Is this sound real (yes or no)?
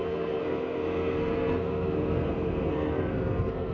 no